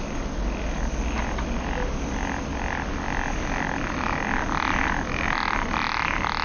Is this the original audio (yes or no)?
yes